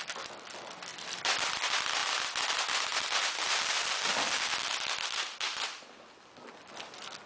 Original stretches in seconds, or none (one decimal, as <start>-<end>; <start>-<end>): 0.0-7.3